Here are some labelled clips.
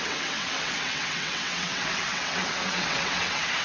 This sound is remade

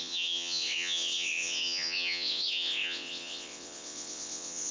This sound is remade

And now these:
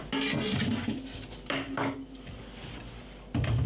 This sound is recorded